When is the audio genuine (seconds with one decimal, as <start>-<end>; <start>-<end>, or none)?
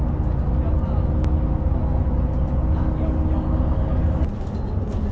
0.0-5.1